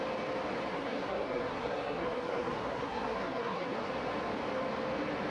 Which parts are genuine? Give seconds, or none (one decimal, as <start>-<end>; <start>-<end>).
0.0-0.7; 3.9-5.3